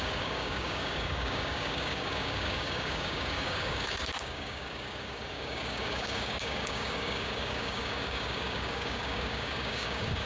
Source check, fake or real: fake